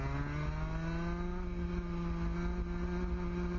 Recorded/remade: recorded